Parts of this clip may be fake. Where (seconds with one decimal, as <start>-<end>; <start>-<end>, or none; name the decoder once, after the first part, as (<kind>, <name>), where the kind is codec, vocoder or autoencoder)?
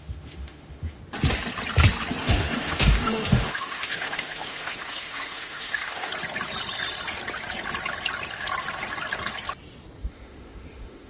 0.0-1.0 (autoencoder, DAC-VAE); 2.2-6.1; 10.1-11.1